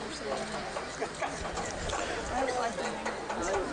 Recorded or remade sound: recorded